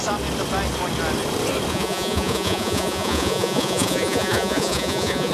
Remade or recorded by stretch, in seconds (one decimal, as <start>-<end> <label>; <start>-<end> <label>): 0.0-1.7 recorded; 1.7-5.3 remade